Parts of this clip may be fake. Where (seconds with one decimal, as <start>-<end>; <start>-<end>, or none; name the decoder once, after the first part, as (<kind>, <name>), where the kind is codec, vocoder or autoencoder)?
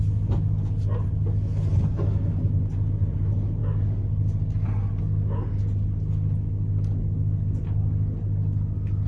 none